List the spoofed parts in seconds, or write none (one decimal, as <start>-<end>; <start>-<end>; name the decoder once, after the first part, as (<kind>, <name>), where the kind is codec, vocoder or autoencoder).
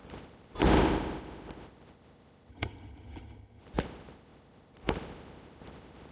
2.5-3.6 (vocoder, HiFi-GAN)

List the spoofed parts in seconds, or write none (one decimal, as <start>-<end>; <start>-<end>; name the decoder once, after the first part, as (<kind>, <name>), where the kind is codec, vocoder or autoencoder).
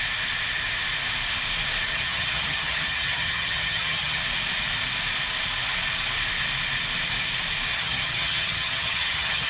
1.9-4.2 (vocoder, HiFi-GAN); 7.7-9.5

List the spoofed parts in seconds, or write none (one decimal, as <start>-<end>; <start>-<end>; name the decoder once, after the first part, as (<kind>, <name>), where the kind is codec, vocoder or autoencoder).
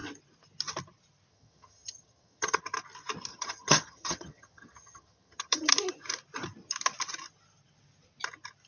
1.3-2.6 (vocoder, HiFi-GAN); 3.3-5.7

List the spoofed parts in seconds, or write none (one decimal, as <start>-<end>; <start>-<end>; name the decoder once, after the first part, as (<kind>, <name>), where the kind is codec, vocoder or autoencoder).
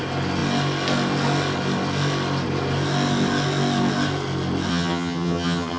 4.7-5.8 (vocoder, HiFi-GAN)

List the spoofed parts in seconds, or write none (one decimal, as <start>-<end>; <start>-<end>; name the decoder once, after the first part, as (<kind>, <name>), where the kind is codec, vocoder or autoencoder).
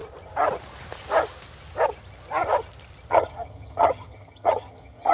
3.1-5.1 (vocoder, HiFi-GAN)